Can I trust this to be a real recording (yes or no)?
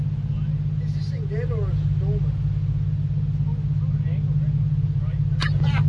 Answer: yes